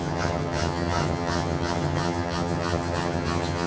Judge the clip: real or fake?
fake